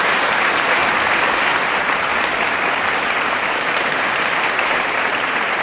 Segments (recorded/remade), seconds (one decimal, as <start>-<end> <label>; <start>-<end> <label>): 0.0-0.8 remade; 0.8-1.5 recorded; 1.5-2.1 remade; 2.1-3.7 recorded; 3.7-5.6 remade